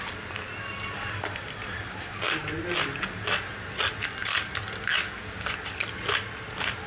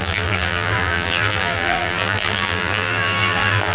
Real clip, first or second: first